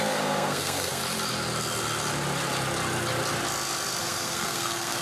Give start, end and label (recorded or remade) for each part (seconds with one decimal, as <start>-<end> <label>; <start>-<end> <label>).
0.0-1.0 remade; 1.0-4.0 recorded; 4.0-5.0 remade